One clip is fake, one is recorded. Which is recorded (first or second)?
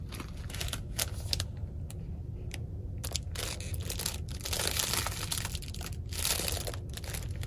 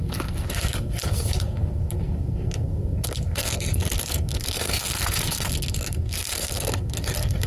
first